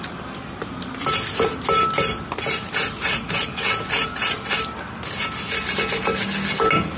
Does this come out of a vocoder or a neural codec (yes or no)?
no